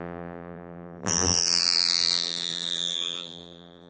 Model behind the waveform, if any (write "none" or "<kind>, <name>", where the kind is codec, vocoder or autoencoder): vocoder, BigVGAN v2